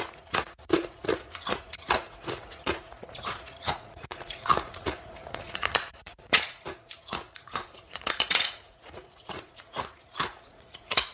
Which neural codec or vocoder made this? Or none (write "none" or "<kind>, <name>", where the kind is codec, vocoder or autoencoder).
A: vocoder, Vocos